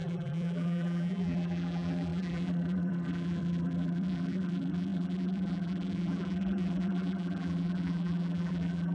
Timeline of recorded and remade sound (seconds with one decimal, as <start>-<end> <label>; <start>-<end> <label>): 0.0-8.9 remade